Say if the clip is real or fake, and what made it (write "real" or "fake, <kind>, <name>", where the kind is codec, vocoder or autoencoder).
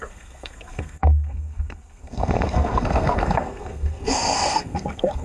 fake, codec, SNAC